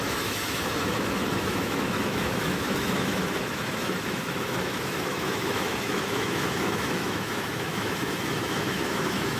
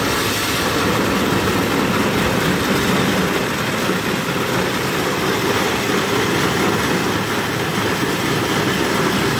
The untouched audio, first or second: second